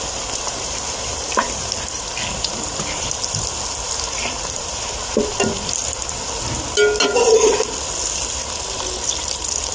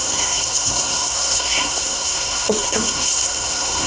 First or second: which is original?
first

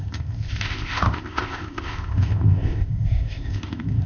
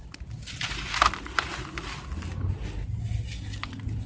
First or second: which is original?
second